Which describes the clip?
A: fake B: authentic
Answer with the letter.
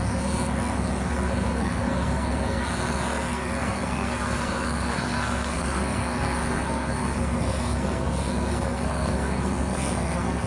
A